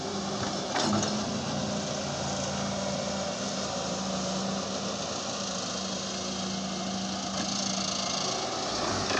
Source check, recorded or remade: recorded